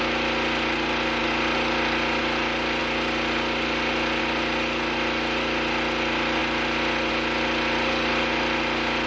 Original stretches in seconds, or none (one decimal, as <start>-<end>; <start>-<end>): 0.0-9.1